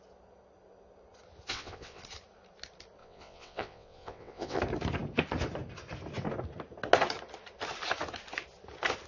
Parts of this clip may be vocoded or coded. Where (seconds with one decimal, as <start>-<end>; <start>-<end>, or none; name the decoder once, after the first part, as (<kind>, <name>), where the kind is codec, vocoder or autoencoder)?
1.5-2.0 (vocoder, WaveNeXt); 3.0-4.6